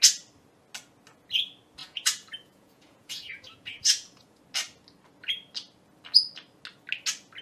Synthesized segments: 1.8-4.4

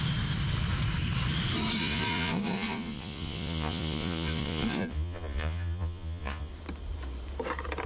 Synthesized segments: 1.8-6.5

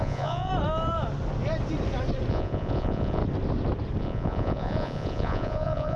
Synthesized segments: 0.0-0.5; 2.3-3.2; 4.0-6.0

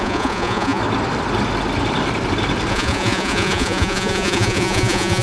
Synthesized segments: 0.0-0.8; 2.7-5.2

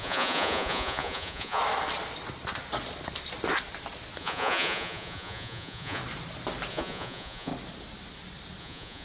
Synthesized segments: 0.0-1.6; 4.2-6.0; 6.7-7.5; 8.6-9.0

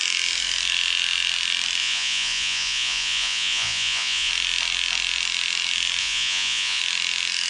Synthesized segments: 1.8-4.3; 6.0-6.8

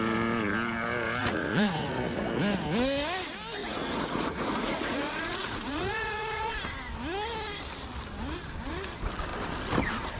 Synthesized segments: 1.2-2.3; 3.6-6.5

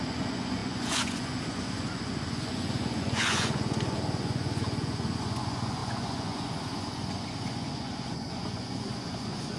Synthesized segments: 0.0-9.6